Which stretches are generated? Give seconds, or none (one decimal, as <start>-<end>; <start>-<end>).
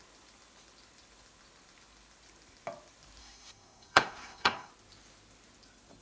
3.2-4.7